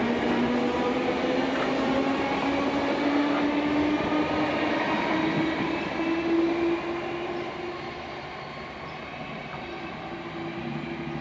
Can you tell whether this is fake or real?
real